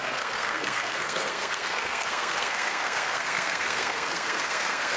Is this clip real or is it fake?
fake